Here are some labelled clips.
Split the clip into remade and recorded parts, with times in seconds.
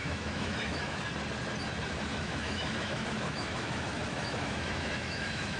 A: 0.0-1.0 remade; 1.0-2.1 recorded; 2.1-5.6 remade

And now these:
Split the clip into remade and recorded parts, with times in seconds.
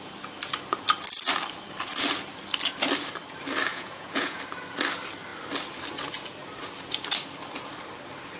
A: 0.0-3.7 recorded; 3.7-4.4 remade; 4.4-8.4 recorded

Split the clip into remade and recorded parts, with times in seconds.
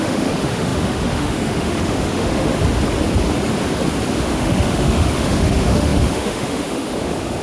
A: 0.0-2.5 remade; 2.5-4.1 recorded; 4.1-7.4 remade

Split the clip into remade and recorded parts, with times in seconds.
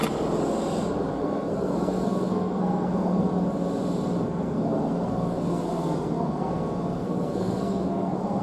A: 0.0-1.1 recorded; 1.1-3.3 remade; 3.3-4.2 recorded; 4.2-8.4 remade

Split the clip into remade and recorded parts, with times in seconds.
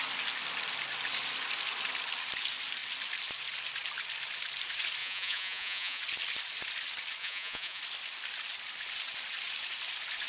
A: 0.0-5.0 recorded; 5.0-6.0 remade; 6.0-7.2 recorded; 7.2-7.8 remade; 7.8-10.3 recorded